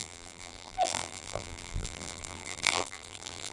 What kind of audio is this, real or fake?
fake